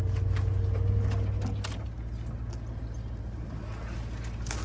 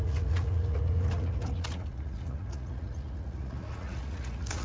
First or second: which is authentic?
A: first